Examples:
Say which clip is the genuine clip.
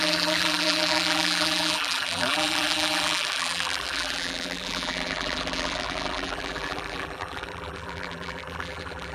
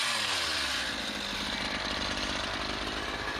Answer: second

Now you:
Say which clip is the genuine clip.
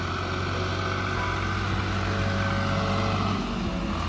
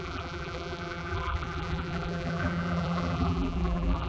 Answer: first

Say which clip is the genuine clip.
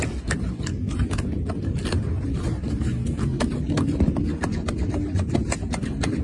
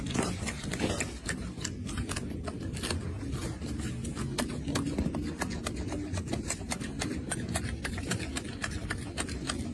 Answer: second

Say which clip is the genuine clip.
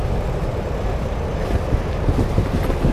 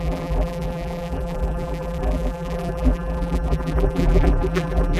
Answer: first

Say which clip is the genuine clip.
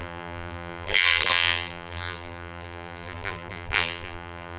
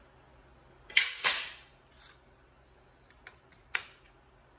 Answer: second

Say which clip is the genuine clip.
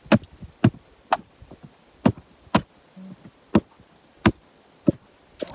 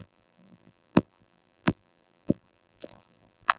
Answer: first